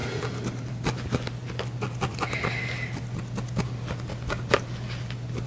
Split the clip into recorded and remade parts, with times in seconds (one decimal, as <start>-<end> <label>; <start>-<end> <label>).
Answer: 0.0-5.5 recorded